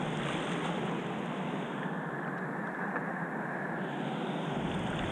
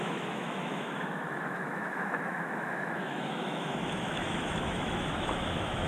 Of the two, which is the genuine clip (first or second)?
first